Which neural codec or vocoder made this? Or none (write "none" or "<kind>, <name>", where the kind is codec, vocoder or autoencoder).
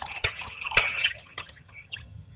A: vocoder, HiFi-GAN